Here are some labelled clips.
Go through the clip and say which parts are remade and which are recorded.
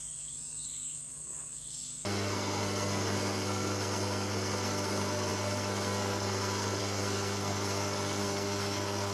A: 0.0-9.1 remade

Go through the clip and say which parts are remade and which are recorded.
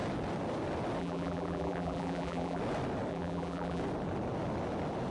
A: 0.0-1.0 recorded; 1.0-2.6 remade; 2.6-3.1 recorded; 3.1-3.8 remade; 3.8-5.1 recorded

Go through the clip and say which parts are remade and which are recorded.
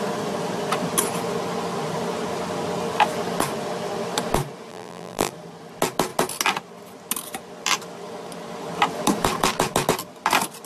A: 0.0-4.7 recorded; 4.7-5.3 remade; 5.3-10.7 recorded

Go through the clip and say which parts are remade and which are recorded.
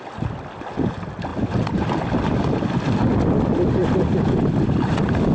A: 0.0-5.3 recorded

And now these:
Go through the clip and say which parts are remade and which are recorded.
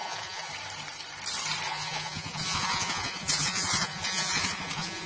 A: 0.0-0.5 remade; 0.5-1.7 recorded; 1.7-5.1 remade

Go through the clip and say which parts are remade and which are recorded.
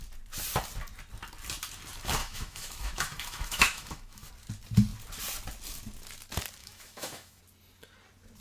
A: 0.0-2.2 recorded; 2.2-4.3 remade; 4.3-6.6 recorded; 6.6-7.4 remade; 7.4-8.4 recorded